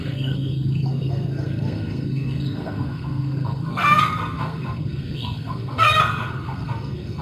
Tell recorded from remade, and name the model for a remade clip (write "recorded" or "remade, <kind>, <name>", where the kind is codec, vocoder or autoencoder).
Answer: remade, codec, SNAC